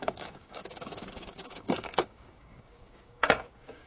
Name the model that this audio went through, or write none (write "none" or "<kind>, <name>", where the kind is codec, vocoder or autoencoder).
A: codec, DAC